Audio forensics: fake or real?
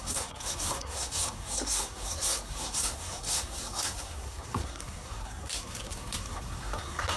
fake